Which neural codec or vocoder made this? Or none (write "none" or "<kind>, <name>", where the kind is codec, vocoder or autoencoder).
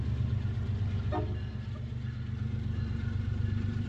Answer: none